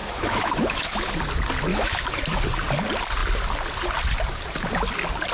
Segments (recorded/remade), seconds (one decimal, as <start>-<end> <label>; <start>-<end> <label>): 0.0-1.1 remade; 1.1-1.7 recorded; 1.7-2.4 remade; 2.4-5.3 recorded